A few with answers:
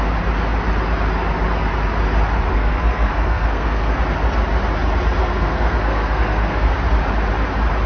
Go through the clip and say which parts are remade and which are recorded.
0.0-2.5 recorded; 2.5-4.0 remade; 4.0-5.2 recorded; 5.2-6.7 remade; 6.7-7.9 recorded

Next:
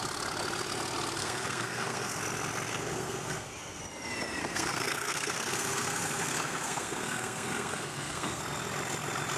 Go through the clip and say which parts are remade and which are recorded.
0.0-1.2 recorded; 1.2-2.2 remade; 2.2-2.7 recorded; 2.7-3.8 remade; 3.8-4.4 recorded; 4.4-8.4 remade; 8.4-9.4 recorded

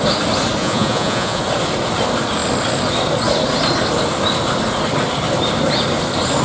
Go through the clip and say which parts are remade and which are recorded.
0.0-0.6 recorded; 0.6-1.4 remade; 1.4-6.4 recorded

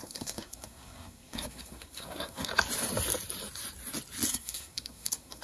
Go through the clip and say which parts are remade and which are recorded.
0.0-2.5 remade; 2.5-4.3 recorded; 4.3-5.4 remade

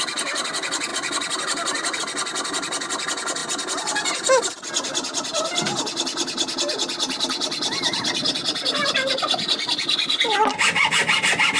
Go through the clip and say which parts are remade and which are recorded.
0.0-11.6 recorded

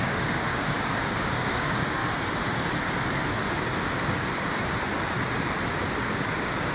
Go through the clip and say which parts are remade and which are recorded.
0.0-2.0 remade; 2.0-6.0 recorded; 6.0-6.7 remade

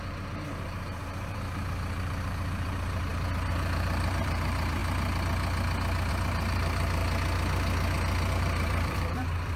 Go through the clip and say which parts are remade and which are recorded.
0.0-4.8 remade; 4.8-6.1 recorded; 6.1-7.0 remade; 7.0-8.3 recorded; 8.3-9.6 remade